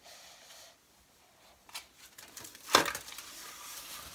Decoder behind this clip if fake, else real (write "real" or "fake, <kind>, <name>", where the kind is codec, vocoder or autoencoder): real